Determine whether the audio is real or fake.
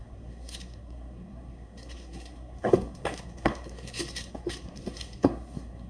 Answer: fake